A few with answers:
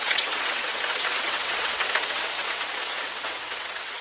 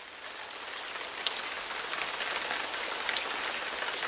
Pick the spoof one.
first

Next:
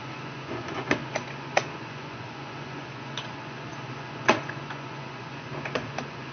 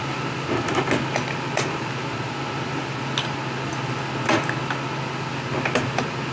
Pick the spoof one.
first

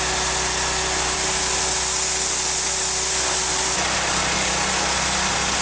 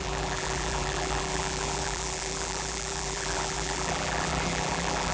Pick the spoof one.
second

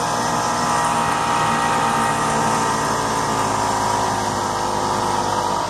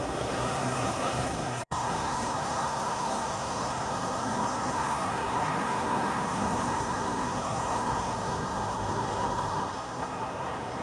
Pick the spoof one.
second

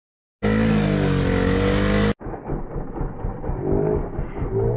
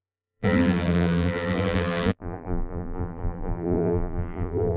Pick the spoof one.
second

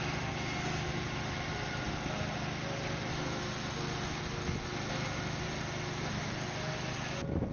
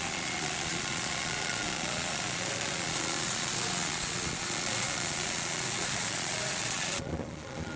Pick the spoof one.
second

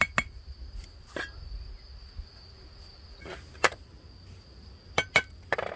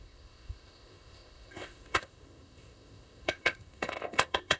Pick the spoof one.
second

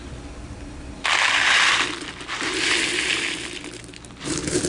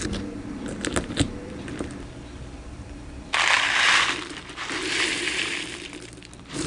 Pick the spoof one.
second